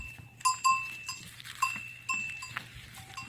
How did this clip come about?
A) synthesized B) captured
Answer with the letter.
B